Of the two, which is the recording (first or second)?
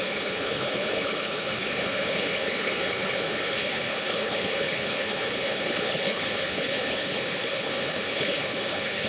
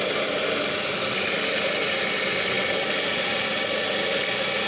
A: second